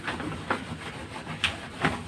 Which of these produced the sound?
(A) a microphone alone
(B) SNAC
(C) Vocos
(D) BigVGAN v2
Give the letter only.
A